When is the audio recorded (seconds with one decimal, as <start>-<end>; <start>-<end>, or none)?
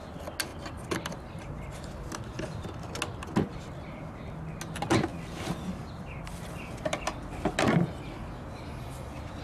0.0-0.5; 1.5-5.1; 6.2-9.4